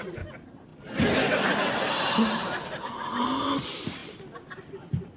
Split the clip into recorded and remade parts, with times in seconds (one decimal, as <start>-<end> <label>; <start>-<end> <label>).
0.0-5.2 recorded